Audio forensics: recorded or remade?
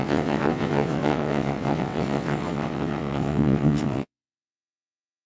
remade